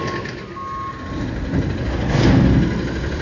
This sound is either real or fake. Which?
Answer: real